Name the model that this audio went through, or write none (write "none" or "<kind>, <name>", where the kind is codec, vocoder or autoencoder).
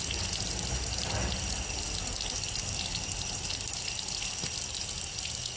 none